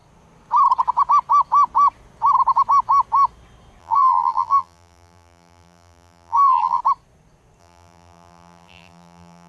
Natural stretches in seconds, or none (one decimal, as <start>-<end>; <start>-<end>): 0.0-3.8; 6.8-7.6